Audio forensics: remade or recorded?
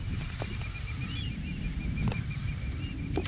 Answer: recorded